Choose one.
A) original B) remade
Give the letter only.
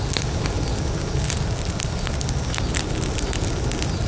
A